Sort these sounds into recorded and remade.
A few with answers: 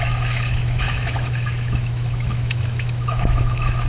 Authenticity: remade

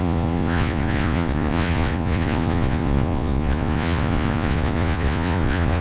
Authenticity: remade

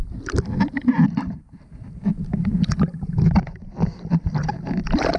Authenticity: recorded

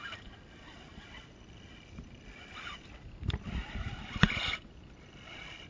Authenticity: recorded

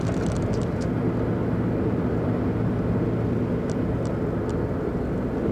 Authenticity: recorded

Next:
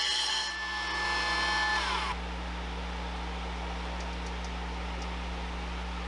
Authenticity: recorded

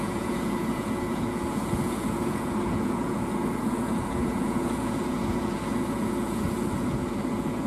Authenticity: remade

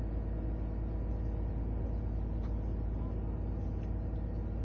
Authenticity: recorded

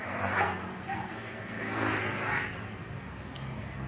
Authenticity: remade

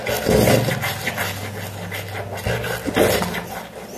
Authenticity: recorded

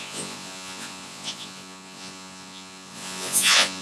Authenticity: remade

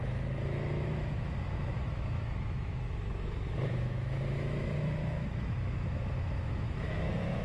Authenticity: remade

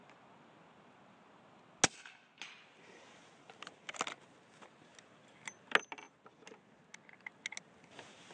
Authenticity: recorded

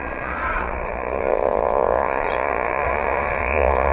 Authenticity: remade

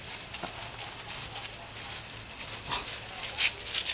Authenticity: recorded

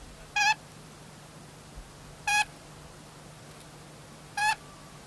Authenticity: recorded